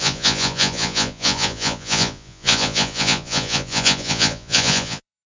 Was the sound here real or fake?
fake